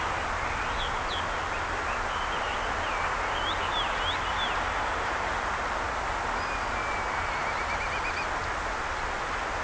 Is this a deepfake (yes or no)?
no